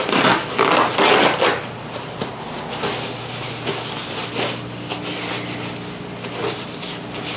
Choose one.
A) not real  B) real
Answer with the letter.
B